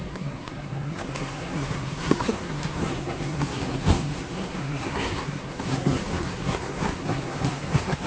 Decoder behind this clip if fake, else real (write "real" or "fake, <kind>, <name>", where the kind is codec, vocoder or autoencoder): fake, codec, SNAC